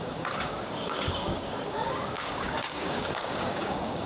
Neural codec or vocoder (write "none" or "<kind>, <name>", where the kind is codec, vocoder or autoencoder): codec, DAC